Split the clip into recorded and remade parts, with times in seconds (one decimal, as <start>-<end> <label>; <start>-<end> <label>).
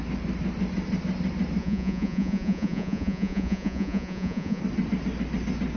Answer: 0.0-1.6 recorded; 1.6-4.6 remade; 4.6-5.8 recorded